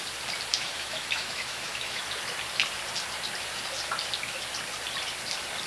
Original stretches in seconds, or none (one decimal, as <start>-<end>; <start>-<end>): 0.0-0.5; 2.0-5.7